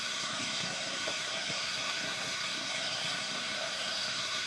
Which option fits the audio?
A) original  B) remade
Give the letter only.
B